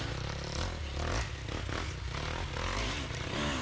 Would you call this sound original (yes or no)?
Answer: yes